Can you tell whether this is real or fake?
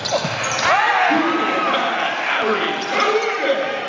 real